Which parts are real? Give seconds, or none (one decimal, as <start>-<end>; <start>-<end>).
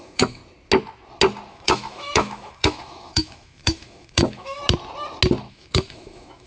0.4-1.5; 4.6-5.5